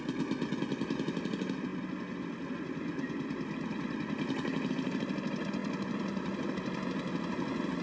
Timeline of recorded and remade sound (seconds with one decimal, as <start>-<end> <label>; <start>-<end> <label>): 0.0-5.6 recorded; 5.6-6.5 remade; 6.5-7.8 recorded